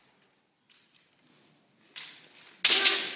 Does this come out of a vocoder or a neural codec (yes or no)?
no